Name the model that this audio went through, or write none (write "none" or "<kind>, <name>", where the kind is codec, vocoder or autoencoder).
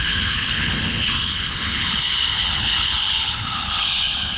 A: codec, HILCodec